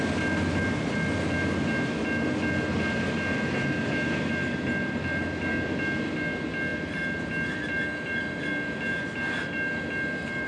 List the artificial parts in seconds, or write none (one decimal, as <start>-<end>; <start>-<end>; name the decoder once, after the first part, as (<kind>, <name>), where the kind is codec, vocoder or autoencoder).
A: none